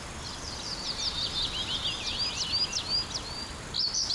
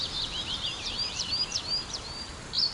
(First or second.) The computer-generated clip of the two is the second